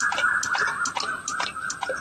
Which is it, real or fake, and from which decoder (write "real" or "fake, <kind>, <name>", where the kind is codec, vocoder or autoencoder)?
real